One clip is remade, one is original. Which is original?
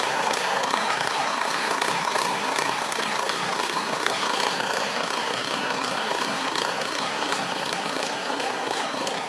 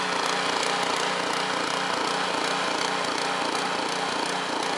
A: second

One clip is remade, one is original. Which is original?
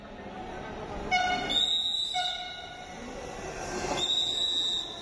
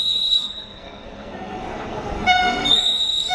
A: first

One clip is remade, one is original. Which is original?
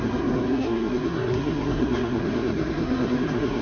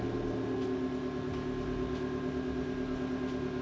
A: second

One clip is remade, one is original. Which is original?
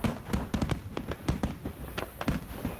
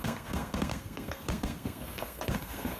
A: first